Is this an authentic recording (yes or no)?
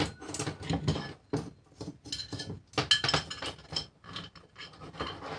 yes